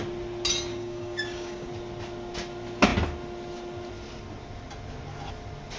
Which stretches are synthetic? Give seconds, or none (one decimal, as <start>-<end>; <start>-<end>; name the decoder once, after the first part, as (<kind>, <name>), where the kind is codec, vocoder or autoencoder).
0.7-1.7 (codec, DAC)